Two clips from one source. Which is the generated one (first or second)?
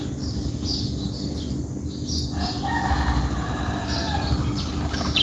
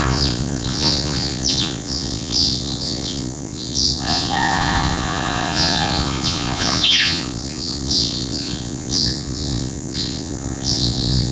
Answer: second